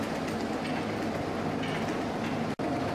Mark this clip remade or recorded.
recorded